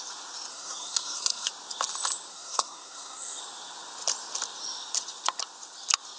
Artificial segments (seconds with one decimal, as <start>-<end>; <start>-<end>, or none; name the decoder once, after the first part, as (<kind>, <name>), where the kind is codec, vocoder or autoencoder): 0.5-1.5 (codec, SNAC); 2.3-3.4